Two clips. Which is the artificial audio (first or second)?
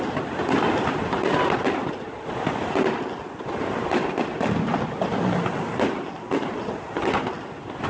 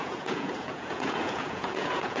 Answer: second